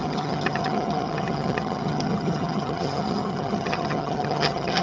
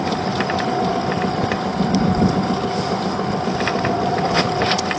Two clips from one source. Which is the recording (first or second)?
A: second